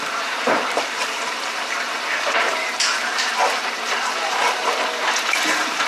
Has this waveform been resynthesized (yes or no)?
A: yes